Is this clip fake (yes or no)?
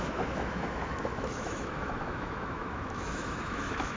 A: yes